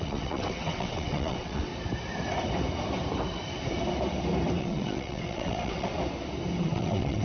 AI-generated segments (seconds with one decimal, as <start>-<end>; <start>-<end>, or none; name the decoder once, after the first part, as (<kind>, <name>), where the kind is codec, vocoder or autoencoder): 0.0-1.7 (vocoder, WaveNeXt); 4.6-5.9; 6.6-7.2

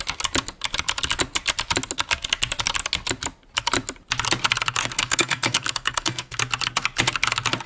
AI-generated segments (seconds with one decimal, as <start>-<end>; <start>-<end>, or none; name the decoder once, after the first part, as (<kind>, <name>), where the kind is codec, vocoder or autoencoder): 4.8-6.4 (codec, SNAC)

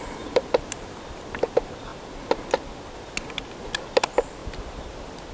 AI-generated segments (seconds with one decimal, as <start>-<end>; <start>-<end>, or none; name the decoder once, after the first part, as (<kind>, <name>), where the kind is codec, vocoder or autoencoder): none

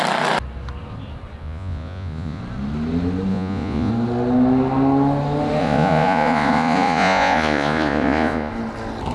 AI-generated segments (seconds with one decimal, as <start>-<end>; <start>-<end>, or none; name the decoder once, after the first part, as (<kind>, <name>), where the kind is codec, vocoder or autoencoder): 1.4-2.4 (vocoder, Vocos); 3.3-3.9; 5.6-8.5

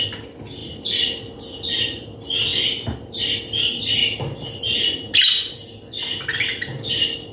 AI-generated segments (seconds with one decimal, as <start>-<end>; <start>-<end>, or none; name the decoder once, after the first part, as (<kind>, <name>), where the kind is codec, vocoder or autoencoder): 0.6-1.4 (vocoder, BigVGAN v2); 2.5-3.4; 4.0-4.8; 6.3-7.3